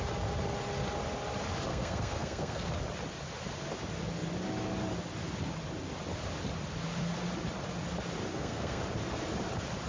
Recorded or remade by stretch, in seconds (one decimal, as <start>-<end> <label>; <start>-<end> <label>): 0.0-1.7 recorded; 1.7-2.7 remade; 2.7-8.3 recorded; 8.3-8.8 remade; 8.8-9.9 recorded